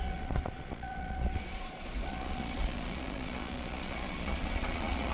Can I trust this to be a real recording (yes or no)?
no